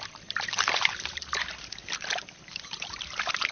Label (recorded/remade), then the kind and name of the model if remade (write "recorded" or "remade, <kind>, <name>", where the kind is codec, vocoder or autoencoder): remade, vocoder, BigVGAN v2